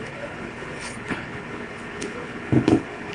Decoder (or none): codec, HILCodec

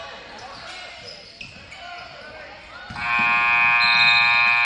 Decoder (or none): none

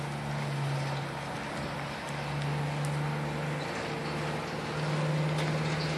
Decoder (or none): none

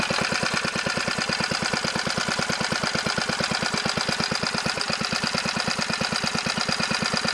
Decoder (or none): none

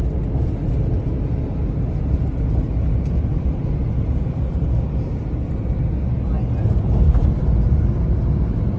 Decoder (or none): none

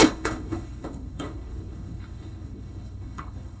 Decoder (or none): codec, HILCodec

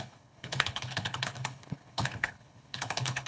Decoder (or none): codec, HILCodec